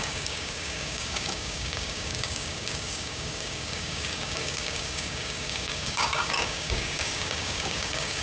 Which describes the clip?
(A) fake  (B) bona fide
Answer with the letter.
A